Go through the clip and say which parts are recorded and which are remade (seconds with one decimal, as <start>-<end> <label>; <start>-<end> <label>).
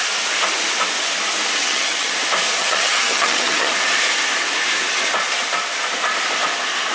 0.0-1.6 recorded; 1.6-2.1 remade; 2.1-2.6 recorded; 2.6-3.7 remade; 3.7-6.9 recorded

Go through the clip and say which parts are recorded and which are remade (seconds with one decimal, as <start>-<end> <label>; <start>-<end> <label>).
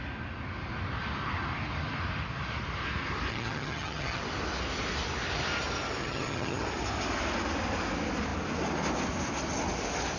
0.0-3.3 recorded; 3.3-4.2 remade; 4.2-6.0 recorded; 6.0-6.6 remade; 6.6-10.2 recorded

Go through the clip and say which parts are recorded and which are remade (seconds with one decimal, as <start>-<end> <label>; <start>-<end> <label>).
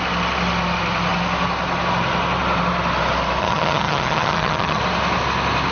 0.0-3.4 recorded; 3.4-4.8 remade; 4.8-5.7 recorded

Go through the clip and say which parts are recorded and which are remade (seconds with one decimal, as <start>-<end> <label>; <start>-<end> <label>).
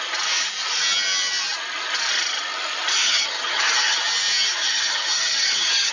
0.0-3.0 recorded; 3.0-4.0 remade; 4.0-4.6 recorded; 4.6-5.9 remade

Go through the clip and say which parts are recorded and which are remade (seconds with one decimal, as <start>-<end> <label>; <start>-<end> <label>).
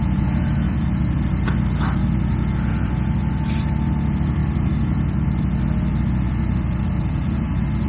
0.0-7.9 recorded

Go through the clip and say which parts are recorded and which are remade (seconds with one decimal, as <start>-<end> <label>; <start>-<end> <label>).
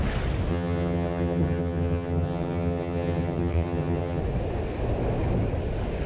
0.0-0.5 recorded; 0.5-4.2 remade; 4.2-6.1 recorded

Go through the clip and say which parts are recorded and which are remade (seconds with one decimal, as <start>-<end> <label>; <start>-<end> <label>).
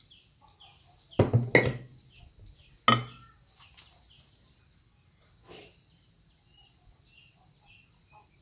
0.0-8.4 recorded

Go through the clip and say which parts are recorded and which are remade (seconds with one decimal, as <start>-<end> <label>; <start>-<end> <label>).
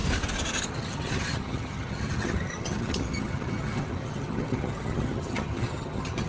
0.0-0.7 recorded; 0.7-6.3 remade